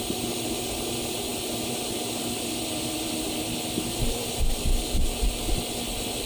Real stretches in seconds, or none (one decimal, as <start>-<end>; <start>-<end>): 0.0-6.3